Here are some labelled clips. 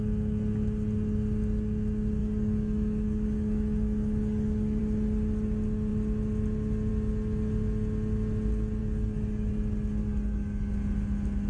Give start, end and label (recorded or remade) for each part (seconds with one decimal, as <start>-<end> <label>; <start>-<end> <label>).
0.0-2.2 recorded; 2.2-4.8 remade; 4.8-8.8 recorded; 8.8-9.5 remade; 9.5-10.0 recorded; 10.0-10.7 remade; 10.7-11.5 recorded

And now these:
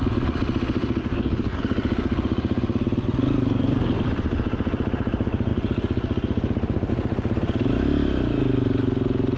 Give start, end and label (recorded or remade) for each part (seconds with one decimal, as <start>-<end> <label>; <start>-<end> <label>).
0.0-1.0 recorded; 1.0-1.6 remade; 1.6-9.4 recorded

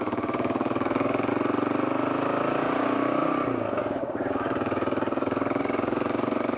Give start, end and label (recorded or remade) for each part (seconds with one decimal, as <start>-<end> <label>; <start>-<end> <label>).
0.0-1.3 remade; 1.3-2.5 recorded; 2.5-6.6 remade

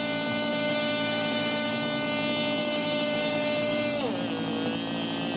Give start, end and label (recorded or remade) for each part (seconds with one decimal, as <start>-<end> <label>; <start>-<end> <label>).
0.0-0.5 recorded; 0.5-1.7 remade; 1.7-2.6 recorded; 2.6-4.1 remade; 4.1-5.4 recorded